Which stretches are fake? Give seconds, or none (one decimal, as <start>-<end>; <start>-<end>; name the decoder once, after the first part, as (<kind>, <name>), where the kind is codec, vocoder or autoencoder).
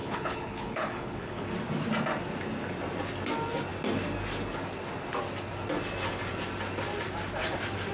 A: 0.0-1.4 (codec, HILCodec)